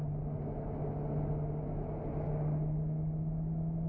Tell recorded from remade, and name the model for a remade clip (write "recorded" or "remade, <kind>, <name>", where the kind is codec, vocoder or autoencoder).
recorded